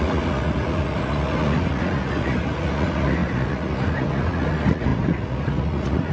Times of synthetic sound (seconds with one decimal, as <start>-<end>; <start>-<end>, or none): 0.0-6.1